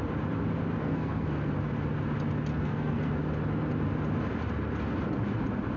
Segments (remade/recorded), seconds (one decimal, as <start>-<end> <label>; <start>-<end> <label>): 0.0-0.8 recorded; 0.8-1.5 remade; 1.5-2.5 recorded; 2.5-3.1 remade; 3.1-5.8 recorded